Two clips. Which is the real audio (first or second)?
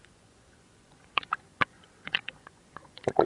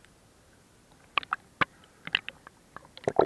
second